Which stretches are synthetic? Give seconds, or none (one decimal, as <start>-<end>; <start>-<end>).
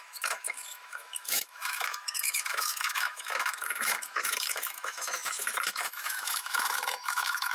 0.0-7.5